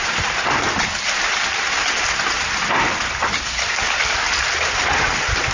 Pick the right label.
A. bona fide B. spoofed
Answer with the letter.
A